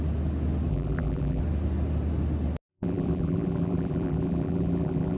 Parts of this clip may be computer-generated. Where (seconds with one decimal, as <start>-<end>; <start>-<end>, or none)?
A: 0.7-1.4; 2.7-5.2